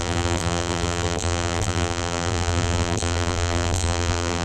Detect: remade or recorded remade